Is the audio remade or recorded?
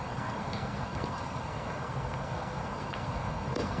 remade